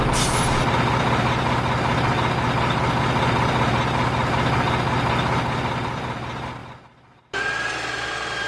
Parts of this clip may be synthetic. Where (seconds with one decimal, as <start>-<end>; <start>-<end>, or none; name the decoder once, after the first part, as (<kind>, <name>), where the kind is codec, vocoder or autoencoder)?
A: none